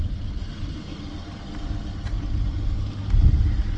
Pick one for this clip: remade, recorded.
recorded